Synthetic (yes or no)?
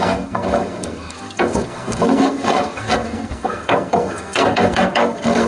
yes